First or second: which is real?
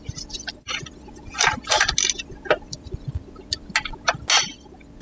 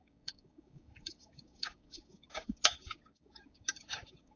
first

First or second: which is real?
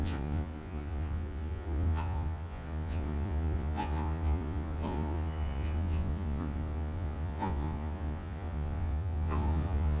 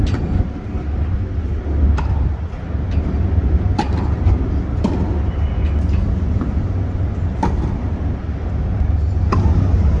second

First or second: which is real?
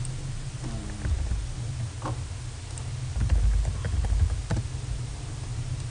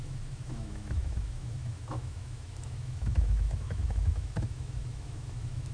first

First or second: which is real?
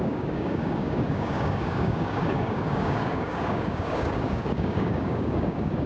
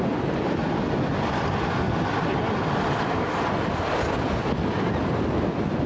second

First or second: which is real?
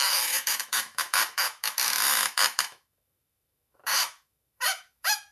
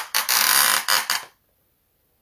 second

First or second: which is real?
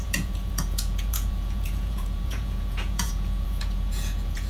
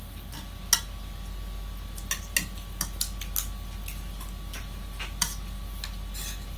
second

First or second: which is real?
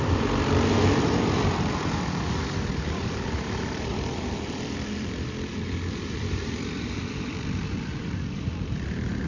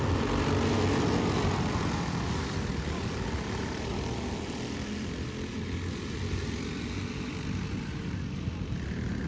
second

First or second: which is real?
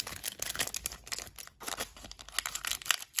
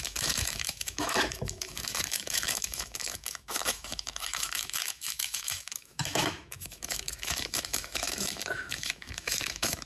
first